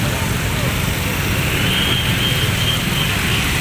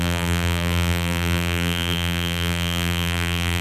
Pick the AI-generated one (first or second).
second